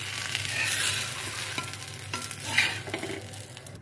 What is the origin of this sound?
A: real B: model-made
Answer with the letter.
A